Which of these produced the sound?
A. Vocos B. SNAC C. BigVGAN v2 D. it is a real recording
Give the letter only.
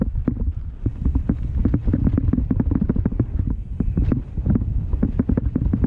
D